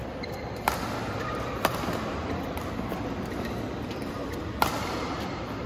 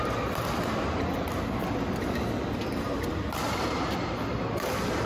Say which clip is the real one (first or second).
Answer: second